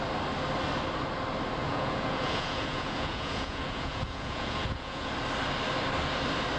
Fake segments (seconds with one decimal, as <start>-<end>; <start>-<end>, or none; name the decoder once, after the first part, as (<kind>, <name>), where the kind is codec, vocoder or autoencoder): 1.6-5.1 (vocoder, Vocos)